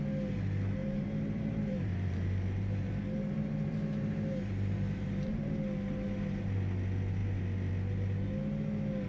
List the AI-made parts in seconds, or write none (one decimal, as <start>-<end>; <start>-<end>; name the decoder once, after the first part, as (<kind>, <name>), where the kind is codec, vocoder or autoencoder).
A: 0.8-5.5 (vocoder, BigVGAN v2)